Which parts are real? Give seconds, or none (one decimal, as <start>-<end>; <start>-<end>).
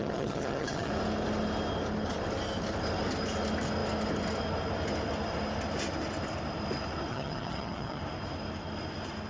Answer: 0.9-7.1; 8.0-9.3